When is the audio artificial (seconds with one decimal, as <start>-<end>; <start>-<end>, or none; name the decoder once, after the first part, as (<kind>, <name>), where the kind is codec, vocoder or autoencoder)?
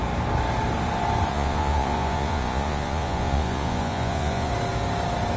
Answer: 1.3-4.5 (vocoder, Vocos)